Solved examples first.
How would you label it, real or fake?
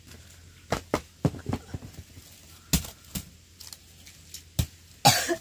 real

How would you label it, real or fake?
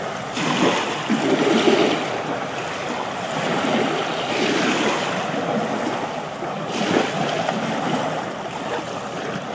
real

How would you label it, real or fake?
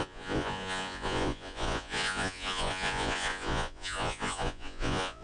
fake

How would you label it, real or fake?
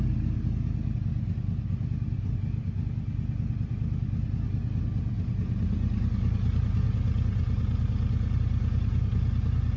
real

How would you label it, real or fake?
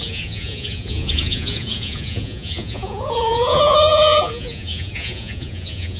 fake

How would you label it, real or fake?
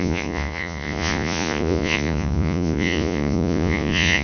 fake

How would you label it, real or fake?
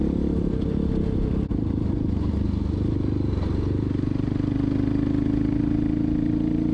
real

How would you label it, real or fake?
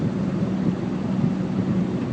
real